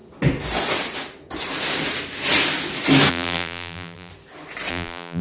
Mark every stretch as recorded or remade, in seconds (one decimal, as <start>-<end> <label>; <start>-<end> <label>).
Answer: 0.0-3.1 recorded; 3.1-4.1 remade; 4.1-4.7 recorded; 4.7-5.2 remade

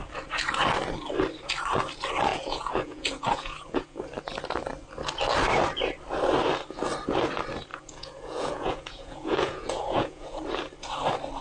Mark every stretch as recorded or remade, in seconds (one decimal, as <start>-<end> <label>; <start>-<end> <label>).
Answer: 0.0-2.3 recorded; 2.3-4.0 remade; 4.0-7.7 recorded; 7.7-10.4 remade; 10.4-11.4 recorded

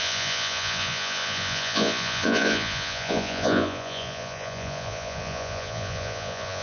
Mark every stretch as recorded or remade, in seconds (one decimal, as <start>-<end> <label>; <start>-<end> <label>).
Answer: 0.0-6.6 remade

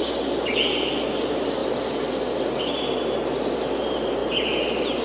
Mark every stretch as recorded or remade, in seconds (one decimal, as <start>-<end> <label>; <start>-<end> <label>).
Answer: 0.0-5.0 recorded

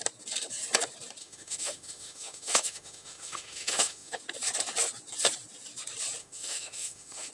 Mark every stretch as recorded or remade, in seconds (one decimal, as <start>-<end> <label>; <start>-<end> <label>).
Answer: 0.0-1.2 recorded; 1.2-4.2 remade; 4.2-6.2 recorded; 6.2-7.3 remade

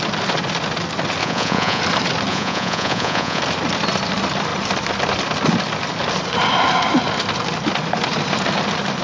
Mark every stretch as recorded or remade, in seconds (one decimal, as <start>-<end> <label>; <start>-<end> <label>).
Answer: 0.0-1.2 recorded; 1.2-1.8 remade; 1.8-2.3 recorded; 2.3-3.4 remade; 3.4-9.0 recorded